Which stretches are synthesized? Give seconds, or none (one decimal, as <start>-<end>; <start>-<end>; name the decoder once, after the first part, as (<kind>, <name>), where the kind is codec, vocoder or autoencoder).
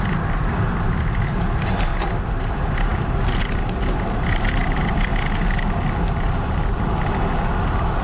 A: 0.0-1.9 (vocoder, BigVGAN v2); 2.5-2.9; 4.2-5.1